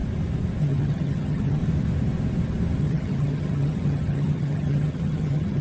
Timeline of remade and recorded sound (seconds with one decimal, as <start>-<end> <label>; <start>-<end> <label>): 0.0-0.6 recorded; 0.6-1.6 remade; 1.6-2.8 recorded; 2.8-5.6 remade